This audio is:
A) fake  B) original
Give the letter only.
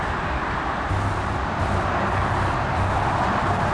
B